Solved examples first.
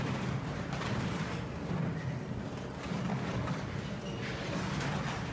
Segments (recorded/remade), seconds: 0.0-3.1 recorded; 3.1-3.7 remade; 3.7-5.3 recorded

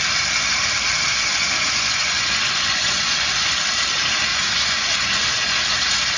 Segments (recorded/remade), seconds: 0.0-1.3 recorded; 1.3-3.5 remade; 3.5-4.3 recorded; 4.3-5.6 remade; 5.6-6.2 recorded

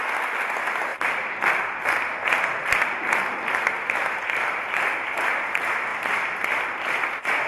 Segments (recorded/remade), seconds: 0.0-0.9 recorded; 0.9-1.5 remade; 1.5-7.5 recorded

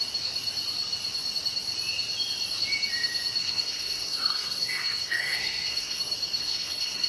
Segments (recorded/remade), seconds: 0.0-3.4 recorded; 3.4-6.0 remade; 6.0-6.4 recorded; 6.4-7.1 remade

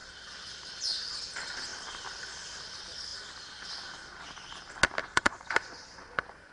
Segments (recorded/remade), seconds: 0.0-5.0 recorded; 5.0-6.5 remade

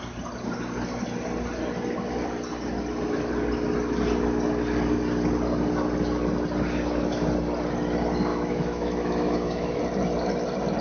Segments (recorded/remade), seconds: 0.0-8.3 recorded; 8.3-9.8 remade; 9.8-10.8 recorded

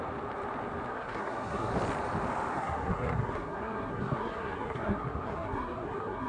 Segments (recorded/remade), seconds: 0.0-0.9 recorded; 0.9-1.7 remade; 1.7-2.5 recorded; 2.5-6.3 remade